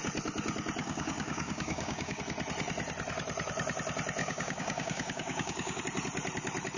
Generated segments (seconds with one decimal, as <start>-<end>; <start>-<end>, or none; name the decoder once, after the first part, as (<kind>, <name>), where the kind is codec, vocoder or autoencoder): 0.8-2.2 (codec, DAC); 4.2-5.8